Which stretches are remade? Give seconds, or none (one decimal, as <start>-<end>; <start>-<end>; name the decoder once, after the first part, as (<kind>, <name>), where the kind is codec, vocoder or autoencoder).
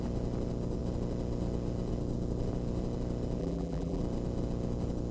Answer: 3.4-4.0 (vocoder, BigVGAN v2)